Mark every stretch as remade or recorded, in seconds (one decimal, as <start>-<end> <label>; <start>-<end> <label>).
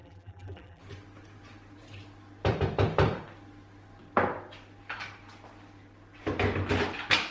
0.0-0.8 remade; 0.8-7.3 recorded